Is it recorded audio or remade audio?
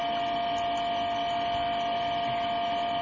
recorded